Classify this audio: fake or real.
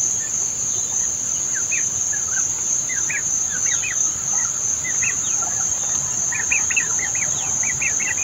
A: real